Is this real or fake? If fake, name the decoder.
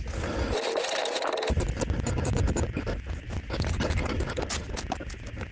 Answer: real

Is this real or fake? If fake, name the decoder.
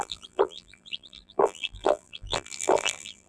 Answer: fake, vocoder, BigVGAN v2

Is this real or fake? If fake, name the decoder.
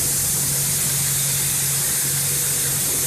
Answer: real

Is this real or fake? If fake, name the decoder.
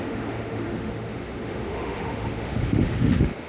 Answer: fake, autoencoder, DAC-VAE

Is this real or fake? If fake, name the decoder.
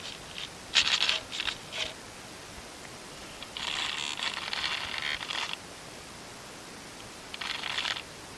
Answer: real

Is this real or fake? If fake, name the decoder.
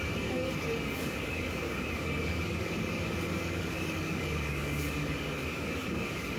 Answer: fake, codec, DAC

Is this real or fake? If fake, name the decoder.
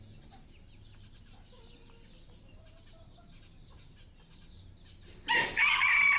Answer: real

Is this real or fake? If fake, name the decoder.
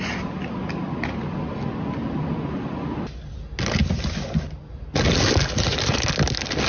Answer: real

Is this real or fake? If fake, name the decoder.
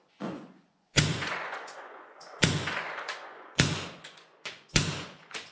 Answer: fake, vocoder, Vocos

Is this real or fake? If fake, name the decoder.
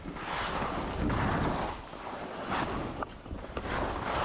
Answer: real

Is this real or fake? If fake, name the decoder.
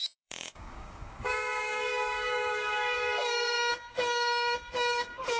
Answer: fake, codec, DAC